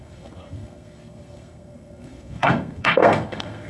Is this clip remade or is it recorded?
remade